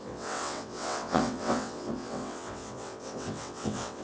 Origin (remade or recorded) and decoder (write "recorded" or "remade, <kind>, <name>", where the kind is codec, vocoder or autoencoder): remade, vocoder, WaveNeXt